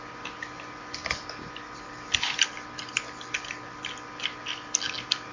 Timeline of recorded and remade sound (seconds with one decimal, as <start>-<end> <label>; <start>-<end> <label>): 0.0-5.3 recorded